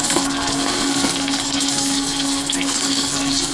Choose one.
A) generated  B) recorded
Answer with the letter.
A